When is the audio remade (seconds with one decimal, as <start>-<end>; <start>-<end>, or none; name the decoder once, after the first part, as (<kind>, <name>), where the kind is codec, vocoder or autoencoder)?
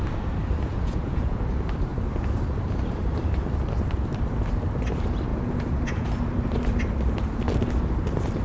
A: 0.7-1.4 (vocoder, Vocos); 5.3-6.1